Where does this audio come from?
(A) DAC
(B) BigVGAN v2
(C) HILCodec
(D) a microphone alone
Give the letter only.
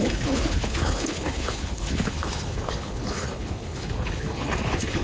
C